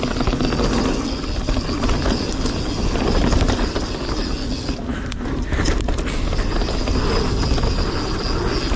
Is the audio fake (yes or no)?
no